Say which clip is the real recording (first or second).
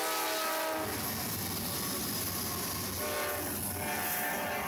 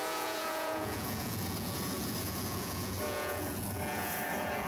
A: first